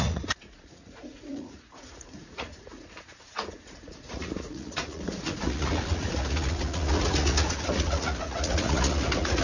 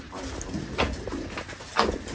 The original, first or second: second